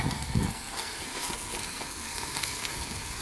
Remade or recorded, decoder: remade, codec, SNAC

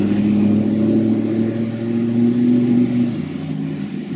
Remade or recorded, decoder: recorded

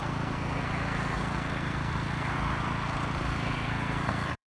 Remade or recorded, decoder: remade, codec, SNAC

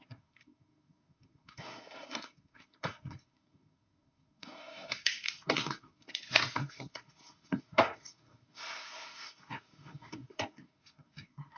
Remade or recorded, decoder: remade, codec, SNAC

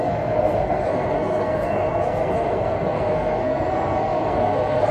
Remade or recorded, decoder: remade, codec, SNAC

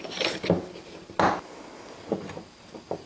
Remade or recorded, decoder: recorded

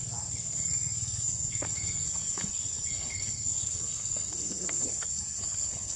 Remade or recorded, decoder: remade, codec, SNAC